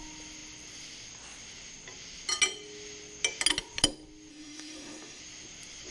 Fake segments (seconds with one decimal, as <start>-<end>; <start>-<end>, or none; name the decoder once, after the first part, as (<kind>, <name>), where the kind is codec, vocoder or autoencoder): 4.3-5.2 (autoencoder, DAC-VAE)